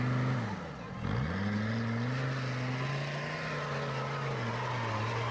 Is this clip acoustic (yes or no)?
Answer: yes